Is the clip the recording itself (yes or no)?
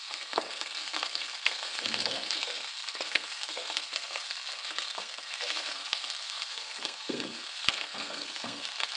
no